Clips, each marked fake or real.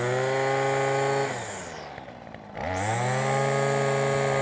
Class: real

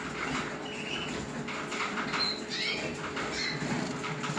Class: real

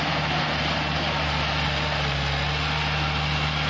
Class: real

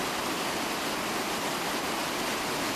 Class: real